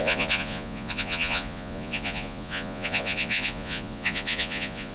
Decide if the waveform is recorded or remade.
remade